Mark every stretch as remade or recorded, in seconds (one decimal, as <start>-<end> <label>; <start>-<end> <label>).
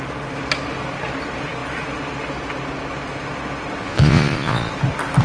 0.0-3.8 recorded; 3.8-4.7 remade; 4.7-5.2 recorded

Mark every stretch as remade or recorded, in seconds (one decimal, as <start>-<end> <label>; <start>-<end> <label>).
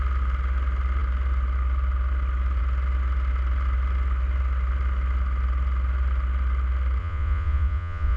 0.0-7.0 recorded; 7.0-8.2 remade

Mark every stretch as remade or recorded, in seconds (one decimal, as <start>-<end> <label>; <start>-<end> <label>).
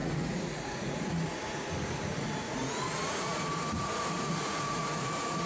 0.0-5.5 remade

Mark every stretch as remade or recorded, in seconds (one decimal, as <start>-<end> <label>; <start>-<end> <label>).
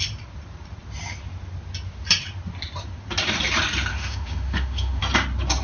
0.0-3.9 recorded; 3.9-5.0 remade; 5.0-5.6 recorded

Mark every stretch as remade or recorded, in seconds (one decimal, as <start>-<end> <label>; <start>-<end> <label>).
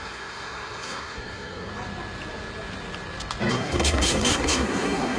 0.0-1.7 remade; 1.7-3.5 recorded; 3.5-5.2 remade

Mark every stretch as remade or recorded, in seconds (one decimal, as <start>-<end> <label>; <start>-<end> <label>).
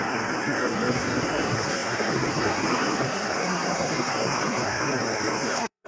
0.0-5.9 remade